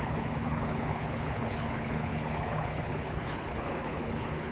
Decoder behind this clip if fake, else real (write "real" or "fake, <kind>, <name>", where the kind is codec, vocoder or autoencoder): fake, codec, HILCodec